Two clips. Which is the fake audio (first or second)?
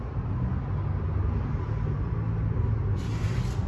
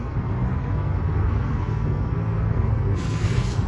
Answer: second